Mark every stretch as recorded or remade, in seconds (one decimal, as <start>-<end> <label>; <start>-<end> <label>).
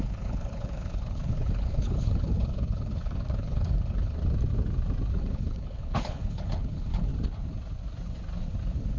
0.0-4.2 remade; 4.2-5.1 recorded; 5.1-7.1 remade; 7.1-8.6 recorded; 8.6-9.0 remade